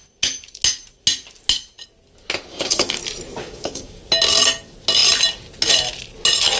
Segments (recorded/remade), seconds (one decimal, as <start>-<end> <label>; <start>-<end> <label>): 0.0-2.5 recorded; 2.5-3.0 remade; 3.0-3.4 recorded; 3.4-4.0 remade; 4.0-6.6 recorded